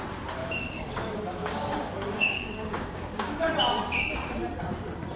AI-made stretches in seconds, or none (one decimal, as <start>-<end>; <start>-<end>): 0.4-3.5